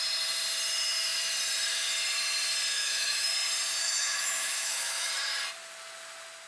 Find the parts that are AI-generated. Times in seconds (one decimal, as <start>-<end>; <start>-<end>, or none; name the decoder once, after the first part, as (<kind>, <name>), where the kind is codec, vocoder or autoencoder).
2.7-3.3 (autoencoder, DAC-VAE); 3.8-5.1